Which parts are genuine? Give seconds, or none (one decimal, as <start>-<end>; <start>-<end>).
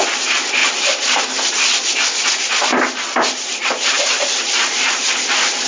0.0-0.6; 1.2-2.7; 5.1-5.7